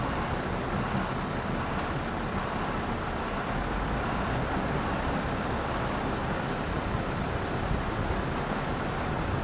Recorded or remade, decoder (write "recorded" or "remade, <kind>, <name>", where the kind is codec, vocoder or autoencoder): recorded